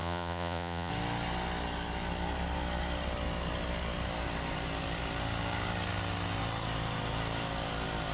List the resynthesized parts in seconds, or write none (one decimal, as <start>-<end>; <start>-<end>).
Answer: 0.0-0.9